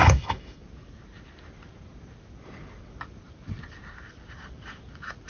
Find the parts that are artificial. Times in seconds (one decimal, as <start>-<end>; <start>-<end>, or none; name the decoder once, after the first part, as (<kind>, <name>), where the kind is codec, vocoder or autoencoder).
0.0-0.6 (autoencoder, DAC-VAE)